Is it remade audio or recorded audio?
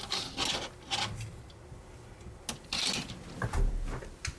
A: recorded